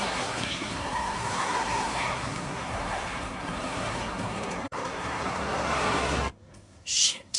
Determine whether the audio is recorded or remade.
remade